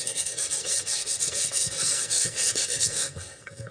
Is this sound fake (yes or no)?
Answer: yes